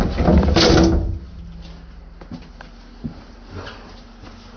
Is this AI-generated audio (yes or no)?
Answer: no